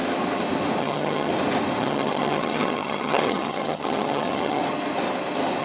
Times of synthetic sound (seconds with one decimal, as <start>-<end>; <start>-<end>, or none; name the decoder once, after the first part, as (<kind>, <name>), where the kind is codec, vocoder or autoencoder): 0.8-1.3 (vocoder, HiFi-GAN); 1.8-4.6